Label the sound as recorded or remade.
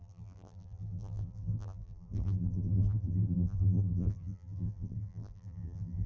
remade